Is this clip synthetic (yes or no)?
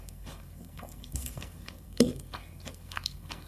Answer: yes